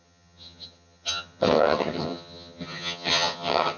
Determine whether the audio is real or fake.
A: fake